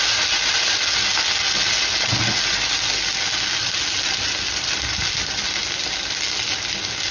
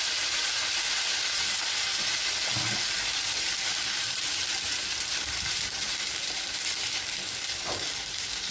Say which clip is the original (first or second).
first